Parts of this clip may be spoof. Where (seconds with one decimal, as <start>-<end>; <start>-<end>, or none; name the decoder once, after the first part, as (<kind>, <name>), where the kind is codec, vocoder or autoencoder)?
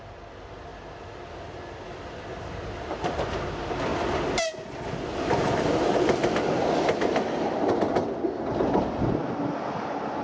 none